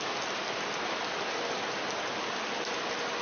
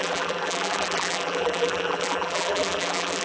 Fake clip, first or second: second